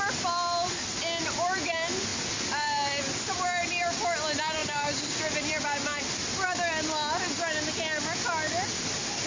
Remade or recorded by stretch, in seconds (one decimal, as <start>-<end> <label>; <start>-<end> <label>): 0.0-2.1 recorded; 2.1-3.0 remade; 3.0-4.6 recorded; 4.6-6.0 remade; 6.0-9.3 recorded